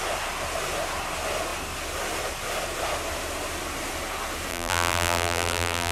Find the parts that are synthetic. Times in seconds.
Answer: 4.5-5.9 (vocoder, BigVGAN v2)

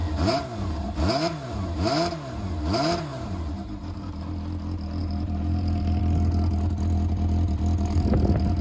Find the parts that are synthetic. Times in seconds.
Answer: 0.0-1.0 (vocoder, BigVGAN v2); 3.1-4.3; 5.0-6.0